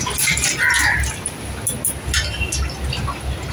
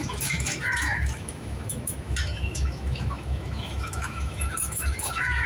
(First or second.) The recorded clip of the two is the first